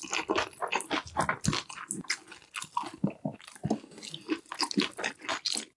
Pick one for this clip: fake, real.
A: real